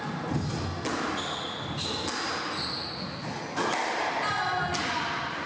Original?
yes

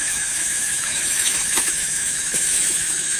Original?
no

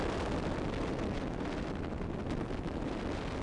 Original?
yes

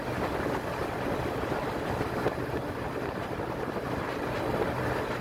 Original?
yes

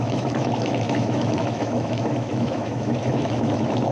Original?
no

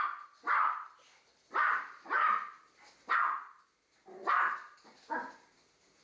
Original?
yes